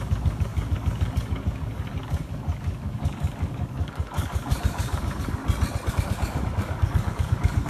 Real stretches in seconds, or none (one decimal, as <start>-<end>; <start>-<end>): 5.4-5.9